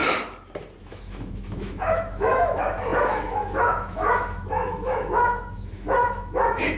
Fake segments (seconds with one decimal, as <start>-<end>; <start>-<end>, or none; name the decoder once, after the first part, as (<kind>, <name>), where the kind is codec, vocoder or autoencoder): 0.8-6.8 (autoencoder, DAC-VAE)